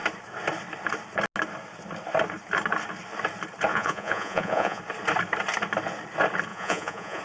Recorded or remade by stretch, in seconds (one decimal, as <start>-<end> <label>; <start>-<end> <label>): 0.0-3.7 recorded; 3.7-4.8 remade; 4.8-6.5 recorded; 6.5-7.2 remade